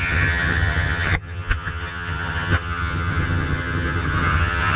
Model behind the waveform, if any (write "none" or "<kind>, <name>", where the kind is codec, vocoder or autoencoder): vocoder, HiFi-GAN